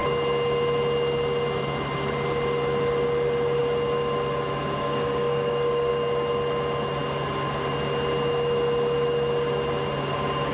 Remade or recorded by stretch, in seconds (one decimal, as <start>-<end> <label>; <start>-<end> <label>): 0.0-4.8 recorded; 4.8-5.9 remade; 5.9-10.5 recorded